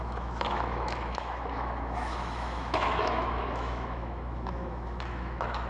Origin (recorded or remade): remade